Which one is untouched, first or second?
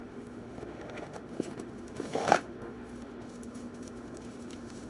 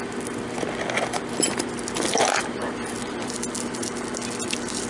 second